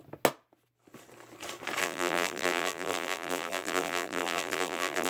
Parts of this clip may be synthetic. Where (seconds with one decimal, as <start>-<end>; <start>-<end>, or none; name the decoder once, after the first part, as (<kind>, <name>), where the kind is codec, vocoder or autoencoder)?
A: 1.8-5.1 (vocoder, BigVGAN v2)